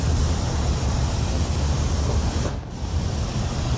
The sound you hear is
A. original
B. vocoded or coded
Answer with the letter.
A